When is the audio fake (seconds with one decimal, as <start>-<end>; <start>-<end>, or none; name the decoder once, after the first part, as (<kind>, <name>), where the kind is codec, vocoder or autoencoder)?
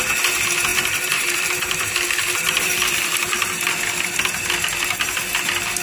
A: 0.7-4.2 (vocoder, BigVGAN v2)